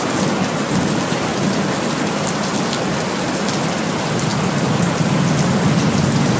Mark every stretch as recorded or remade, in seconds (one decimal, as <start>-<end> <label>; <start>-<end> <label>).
0.0-6.4 recorded